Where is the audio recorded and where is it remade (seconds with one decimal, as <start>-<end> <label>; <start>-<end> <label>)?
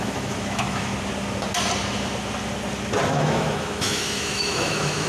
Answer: 0.0-0.9 remade; 0.9-3.1 recorded; 3.1-5.1 remade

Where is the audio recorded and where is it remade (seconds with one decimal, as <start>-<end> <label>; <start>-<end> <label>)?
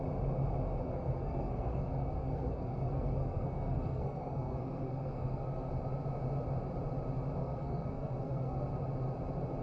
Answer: 0.0-0.8 recorded; 0.8-5.7 remade; 5.7-7.4 recorded; 7.4-8.6 remade; 8.6-9.6 recorded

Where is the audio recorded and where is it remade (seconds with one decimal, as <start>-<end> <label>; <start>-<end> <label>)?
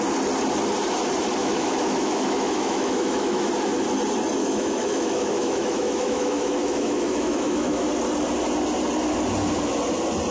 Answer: 0.0-1.4 recorded; 1.4-3.5 remade; 3.5-4.4 recorded; 4.4-7.9 remade; 7.9-10.3 recorded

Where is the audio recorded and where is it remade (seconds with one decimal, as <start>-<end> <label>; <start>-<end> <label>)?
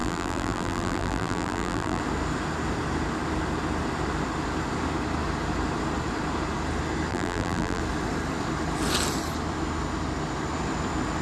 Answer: 0.0-2.0 remade; 2.0-7.1 recorded; 7.1-7.8 remade; 7.8-11.2 recorded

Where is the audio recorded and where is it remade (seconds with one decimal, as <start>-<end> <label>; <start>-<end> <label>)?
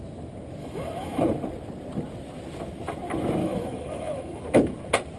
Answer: 0.0-0.6 recorded; 0.6-1.2 remade; 1.2-3.4 recorded; 3.4-4.4 remade; 4.4-5.2 recorded